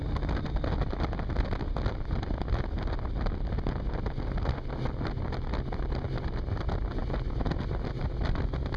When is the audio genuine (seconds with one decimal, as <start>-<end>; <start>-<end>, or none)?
0.0-7.0; 8.1-8.8